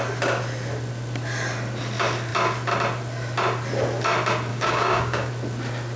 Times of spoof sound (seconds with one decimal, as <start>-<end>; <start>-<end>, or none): 4.5-5.3